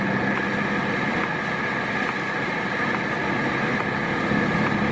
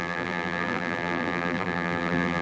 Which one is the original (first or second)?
first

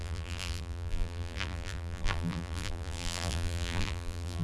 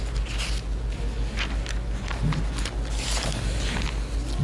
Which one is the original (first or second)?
second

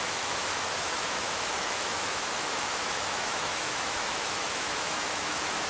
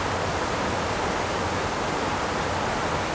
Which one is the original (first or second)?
second